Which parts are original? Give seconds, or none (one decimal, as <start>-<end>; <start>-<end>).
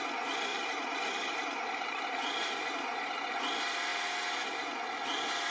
0.0-0.5; 3.5-5.5